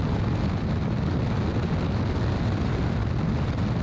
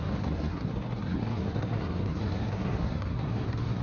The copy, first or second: second